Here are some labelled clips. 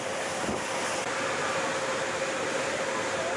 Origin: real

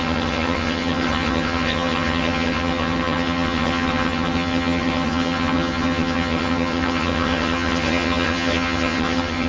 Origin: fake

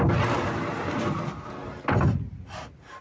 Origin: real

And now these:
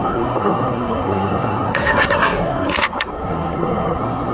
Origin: fake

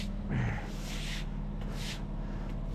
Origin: real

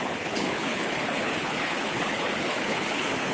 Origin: fake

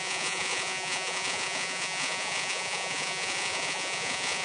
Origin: fake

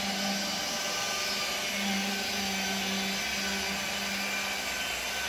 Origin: real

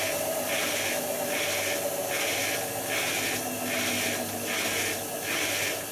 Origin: real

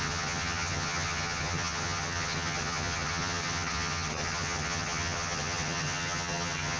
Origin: fake